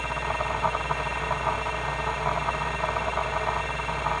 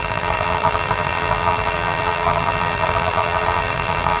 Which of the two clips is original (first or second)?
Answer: first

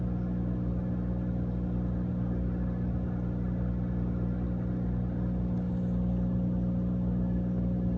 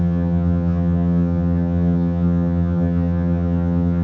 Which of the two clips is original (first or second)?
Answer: first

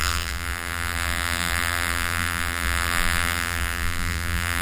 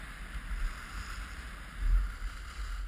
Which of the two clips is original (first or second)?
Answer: second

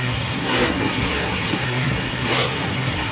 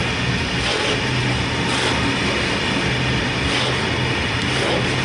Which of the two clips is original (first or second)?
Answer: second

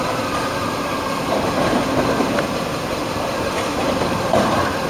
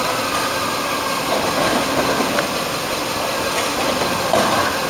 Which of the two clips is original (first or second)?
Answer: second